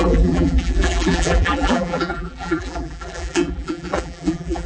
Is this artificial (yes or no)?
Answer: yes